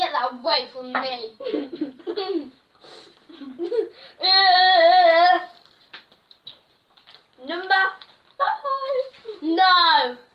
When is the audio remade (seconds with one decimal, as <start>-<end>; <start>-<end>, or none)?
0.4-2.0; 8.3-8.9